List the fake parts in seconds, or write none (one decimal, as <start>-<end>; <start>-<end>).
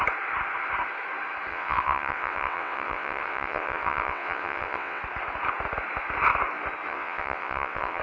1.5-5.0; 6.9-8.0